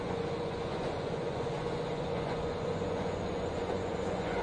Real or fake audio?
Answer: fake